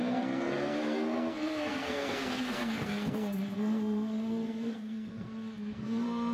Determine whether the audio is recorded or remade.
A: remade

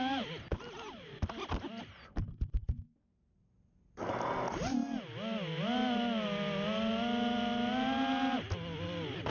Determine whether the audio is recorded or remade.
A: recorded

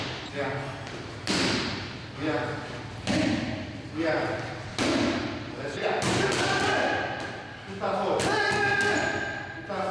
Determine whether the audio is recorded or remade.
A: recorded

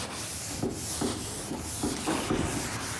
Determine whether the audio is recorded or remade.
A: recorded